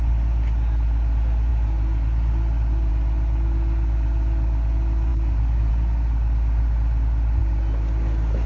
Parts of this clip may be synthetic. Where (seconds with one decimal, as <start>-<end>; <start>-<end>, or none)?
none